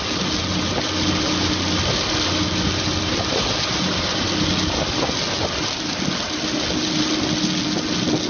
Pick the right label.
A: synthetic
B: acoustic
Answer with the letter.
B